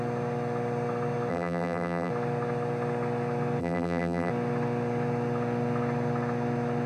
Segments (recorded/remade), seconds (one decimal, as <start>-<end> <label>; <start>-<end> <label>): 0.0-1.3 recorded; 1.3-2.1 remade; 2.1-3.6 recorded; 3.6-4.3 remade; 4.3-6.9 recorded